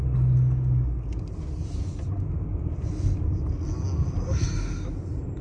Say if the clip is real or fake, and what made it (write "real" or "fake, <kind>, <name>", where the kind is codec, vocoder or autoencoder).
real